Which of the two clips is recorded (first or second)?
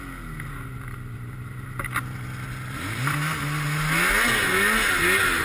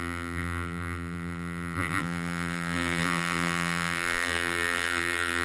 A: first